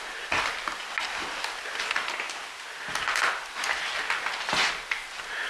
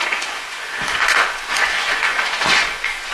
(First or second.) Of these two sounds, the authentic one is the first